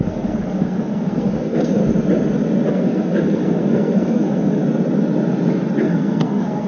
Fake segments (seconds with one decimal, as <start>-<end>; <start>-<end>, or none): 0.0-1.8; 2.7-4.6; 5.8-6.7